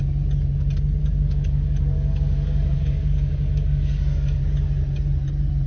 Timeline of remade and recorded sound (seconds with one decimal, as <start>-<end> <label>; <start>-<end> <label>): 0.0-1.0 recorded; 1.0-4.4 remade; 4.4-5.7 recorded